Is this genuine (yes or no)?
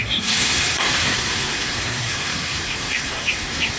no